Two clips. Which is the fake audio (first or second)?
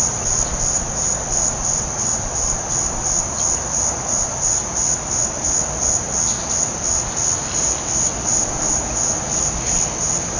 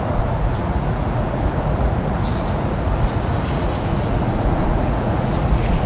second